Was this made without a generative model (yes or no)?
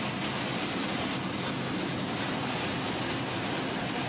yes